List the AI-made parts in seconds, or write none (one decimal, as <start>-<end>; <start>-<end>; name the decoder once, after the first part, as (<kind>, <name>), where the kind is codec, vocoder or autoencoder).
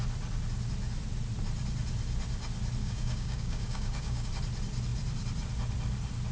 2.8-4.3 (codec, DAC)